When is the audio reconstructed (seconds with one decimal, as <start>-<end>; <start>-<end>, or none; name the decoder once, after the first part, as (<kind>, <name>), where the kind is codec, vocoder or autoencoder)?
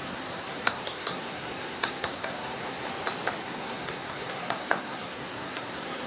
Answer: 0.0-2.9 (codec, SNAC); 3.4-6.1